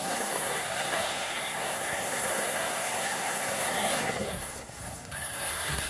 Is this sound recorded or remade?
remade